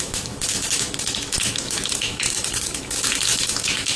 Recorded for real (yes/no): no